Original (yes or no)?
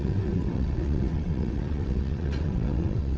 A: no